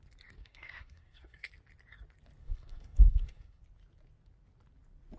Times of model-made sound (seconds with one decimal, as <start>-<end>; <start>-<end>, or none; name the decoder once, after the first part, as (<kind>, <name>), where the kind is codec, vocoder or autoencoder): 0.4-1.5 (codec, SNAC); 2.4-3.6